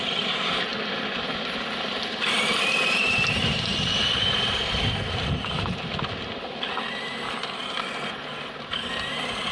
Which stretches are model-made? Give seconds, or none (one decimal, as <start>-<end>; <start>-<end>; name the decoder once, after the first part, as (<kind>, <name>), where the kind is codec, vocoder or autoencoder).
none

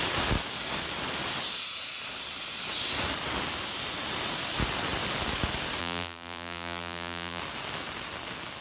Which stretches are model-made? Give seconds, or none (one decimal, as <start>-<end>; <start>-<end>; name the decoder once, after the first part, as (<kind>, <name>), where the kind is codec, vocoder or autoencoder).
5.8-7.4 (vocoder, BigVGAN v2)

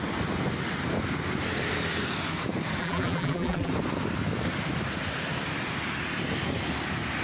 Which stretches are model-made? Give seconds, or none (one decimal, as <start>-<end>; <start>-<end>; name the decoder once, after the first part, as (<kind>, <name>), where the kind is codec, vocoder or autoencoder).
2.8-3.7 (vocoder, BigVGAN v2)

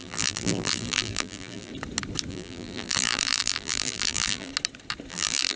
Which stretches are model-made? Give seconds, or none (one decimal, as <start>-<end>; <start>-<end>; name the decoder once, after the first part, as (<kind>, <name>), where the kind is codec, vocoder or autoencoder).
0.0-1.7 (vocoder, BigVGAN v2); 2.3-4.5; 5.1-5.6

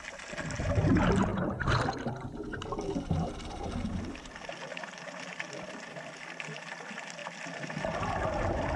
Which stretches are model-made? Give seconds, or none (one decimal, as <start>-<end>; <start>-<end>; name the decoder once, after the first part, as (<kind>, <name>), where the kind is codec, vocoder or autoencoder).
1.3-6.2 (vocoder, BigVGAN v2)

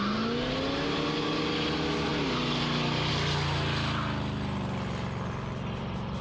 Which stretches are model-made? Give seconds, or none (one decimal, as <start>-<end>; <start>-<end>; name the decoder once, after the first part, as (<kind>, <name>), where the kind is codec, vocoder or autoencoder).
none